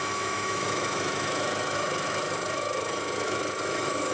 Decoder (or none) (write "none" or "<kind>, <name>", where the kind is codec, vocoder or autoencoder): autoencoder, DAC-VAE